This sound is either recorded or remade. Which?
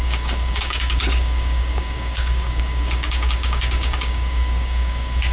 remade